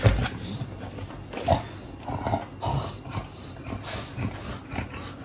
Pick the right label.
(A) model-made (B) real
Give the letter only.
B